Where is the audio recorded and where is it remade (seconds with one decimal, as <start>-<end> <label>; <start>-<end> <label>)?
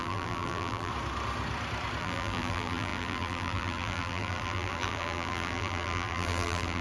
0.0-0.9 remade; 0.9-2.0 recorded; 2.0-6.8 remade